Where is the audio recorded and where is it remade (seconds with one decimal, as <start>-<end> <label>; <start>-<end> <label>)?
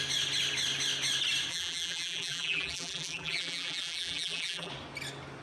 0.0-1.5 recorded; 1.5-4.7 remade; 4.7-5.4 recorded